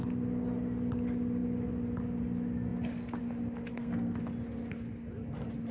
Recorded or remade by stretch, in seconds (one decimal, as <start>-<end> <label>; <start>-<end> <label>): 0.0-3.7 recorded; 3.7-4.2 remade; 4.2-5.7 recorded